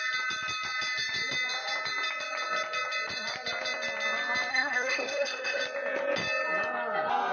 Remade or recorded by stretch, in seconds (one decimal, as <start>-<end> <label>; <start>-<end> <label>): 0.0-4.5 recorded; 4.5-5.6 remade; 5.6-7.3 recorded

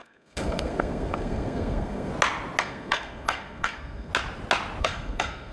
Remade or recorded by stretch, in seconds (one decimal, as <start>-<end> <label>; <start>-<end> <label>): 0.0-2.1 remade; 2.1-2.6 recorded; 2.6-4.1 remade; 4.1-4.8 recorded; 4.8-5.5 remade

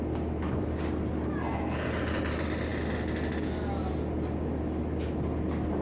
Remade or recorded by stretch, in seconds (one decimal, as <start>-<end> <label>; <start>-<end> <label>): 0.0-5.8 recorded

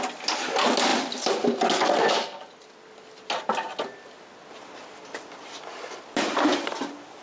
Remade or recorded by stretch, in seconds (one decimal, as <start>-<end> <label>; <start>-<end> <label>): 0.0-7.2 recorded

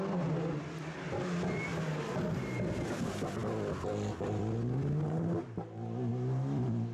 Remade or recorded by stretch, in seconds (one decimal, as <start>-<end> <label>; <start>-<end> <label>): 0.0-6.9 recorded

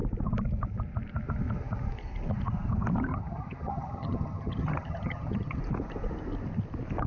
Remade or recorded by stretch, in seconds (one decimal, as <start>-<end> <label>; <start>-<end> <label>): 0.0-3.1 recorded; 3.1-5.6 remade; 5.6-7.1 recorded